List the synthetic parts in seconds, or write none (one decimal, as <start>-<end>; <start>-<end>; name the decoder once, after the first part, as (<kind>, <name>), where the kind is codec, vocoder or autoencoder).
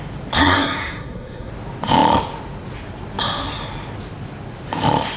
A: 0.4-1.5 (codec, SNAC)